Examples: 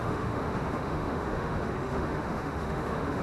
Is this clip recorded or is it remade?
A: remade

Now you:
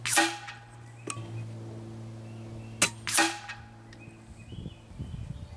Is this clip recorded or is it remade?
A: recorded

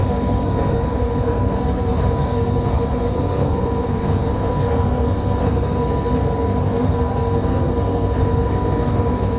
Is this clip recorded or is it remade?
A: remade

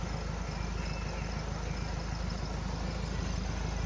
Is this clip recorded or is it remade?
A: recorded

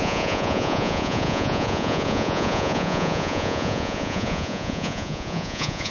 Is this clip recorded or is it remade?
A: remade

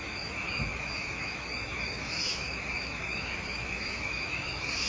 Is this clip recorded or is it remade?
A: remade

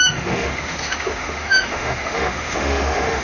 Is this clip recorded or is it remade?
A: remade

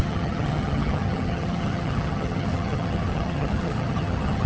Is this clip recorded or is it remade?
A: remade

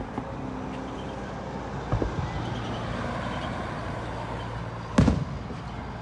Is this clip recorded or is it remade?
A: recorded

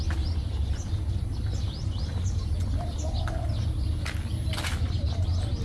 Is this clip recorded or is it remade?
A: recorded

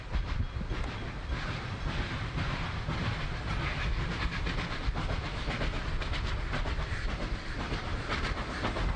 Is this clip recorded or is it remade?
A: recorded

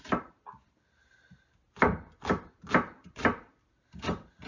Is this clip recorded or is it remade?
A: recorded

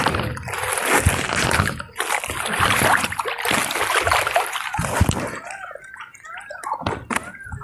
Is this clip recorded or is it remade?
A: recorded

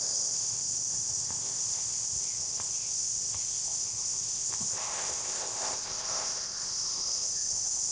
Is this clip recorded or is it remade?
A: remade